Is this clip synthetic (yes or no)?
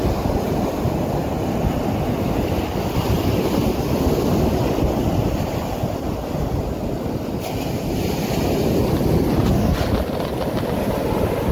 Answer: no